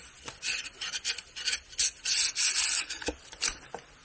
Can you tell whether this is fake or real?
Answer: real